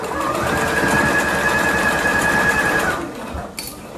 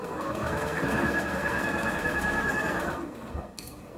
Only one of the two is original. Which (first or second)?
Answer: first